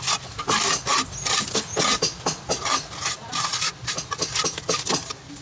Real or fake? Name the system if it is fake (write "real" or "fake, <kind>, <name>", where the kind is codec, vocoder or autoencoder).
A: real